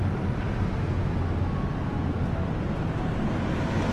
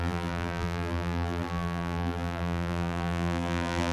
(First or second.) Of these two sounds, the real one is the first